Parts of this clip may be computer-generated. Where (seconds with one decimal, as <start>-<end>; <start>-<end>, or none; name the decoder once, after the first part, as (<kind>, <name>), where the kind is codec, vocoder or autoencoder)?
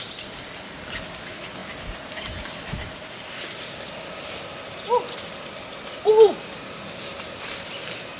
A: none